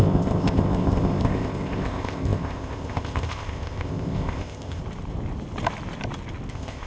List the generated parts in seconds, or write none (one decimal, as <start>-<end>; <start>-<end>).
0.0-4.8; 6.5-6.9